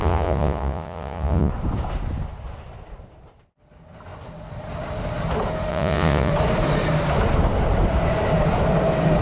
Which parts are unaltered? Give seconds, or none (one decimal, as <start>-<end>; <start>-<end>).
1.5-5.7; 6.3-9.2